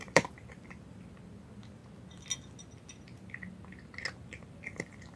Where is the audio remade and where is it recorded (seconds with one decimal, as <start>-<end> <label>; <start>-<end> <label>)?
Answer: 0.0-1.8 remade; 1.8-4.8 recorded; 4.8-5.2 remade